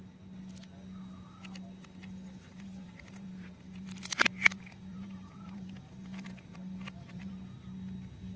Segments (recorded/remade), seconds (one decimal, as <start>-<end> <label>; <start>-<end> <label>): 0.0-2.5 recorded; 2.5-7.3 remade; 7.3-8.4 recorded